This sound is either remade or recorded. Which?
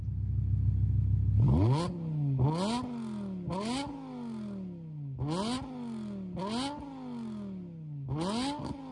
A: recorded